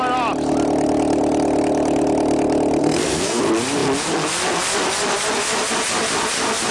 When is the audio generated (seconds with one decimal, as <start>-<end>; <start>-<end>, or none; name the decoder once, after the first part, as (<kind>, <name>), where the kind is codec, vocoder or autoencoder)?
2.8-3.4 (codec, SNAC)